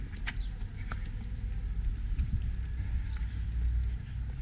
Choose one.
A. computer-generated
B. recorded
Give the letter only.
B